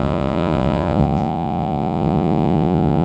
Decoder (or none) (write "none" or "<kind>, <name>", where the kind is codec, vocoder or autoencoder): vocoder, Vocos